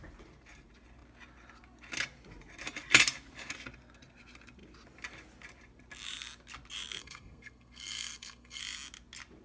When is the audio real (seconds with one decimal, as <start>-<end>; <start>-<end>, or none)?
0.0-7.0; 8.6-9.4

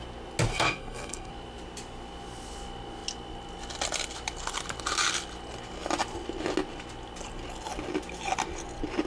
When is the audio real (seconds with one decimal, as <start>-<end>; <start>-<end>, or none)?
0.0-0.5; 1.3-9.1

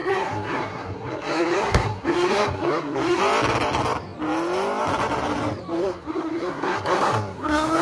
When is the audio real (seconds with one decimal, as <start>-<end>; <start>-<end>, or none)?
3.2-5.8

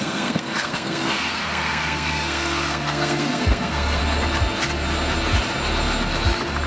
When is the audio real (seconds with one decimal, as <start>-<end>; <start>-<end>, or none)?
4.0-6.7

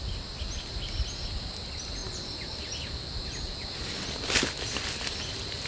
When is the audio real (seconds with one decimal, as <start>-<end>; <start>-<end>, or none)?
0.0-5.7

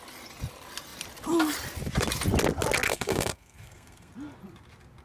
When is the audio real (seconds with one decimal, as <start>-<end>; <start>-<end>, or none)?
0.0-2.9; 4.1-5.0

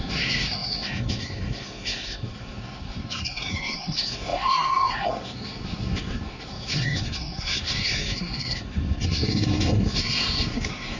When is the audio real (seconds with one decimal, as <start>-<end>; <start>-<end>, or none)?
none

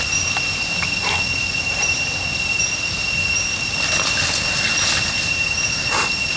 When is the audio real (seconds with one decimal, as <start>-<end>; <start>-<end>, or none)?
0.0-6.4